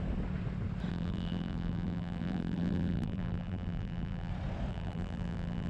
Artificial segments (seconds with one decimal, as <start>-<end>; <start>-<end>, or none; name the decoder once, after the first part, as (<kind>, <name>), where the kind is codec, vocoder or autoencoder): 0.9-4.3 (vocoder, BigVGAN v2); 4.7-5.7